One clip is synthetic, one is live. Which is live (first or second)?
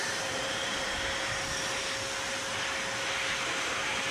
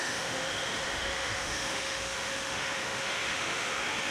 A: first